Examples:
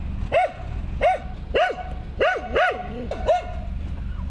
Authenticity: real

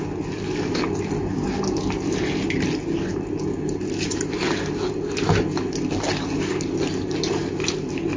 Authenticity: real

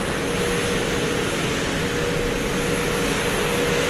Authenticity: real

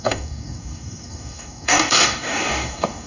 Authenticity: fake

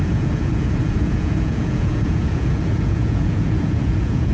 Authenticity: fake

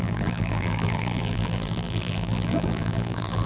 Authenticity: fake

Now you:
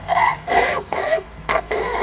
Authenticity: fake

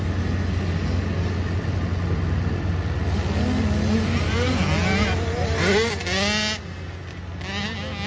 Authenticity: real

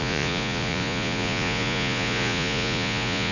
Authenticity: fake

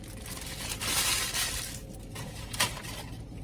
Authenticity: real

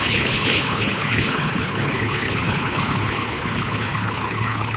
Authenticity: fake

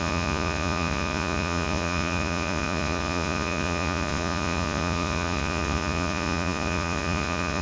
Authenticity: fake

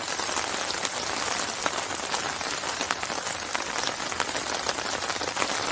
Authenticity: real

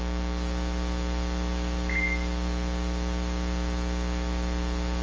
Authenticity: real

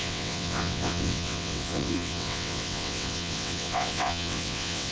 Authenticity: fake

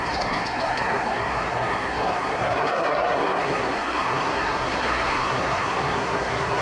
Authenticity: fake